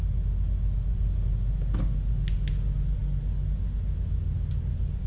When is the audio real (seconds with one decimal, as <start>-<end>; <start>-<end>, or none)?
0.0-5.1

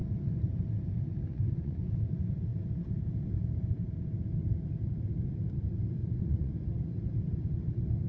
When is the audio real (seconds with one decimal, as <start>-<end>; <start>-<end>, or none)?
0.0-1.3; 1.8-6.0; 6.5-8.1

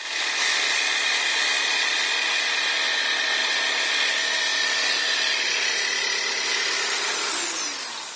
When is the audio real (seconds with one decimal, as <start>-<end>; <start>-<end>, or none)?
0.0-8.2

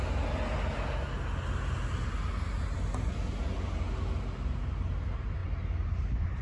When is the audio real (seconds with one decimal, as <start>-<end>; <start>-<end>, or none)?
0.0-6.4

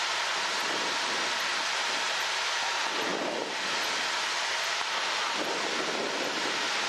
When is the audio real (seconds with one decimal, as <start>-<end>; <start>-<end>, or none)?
0.0-6.9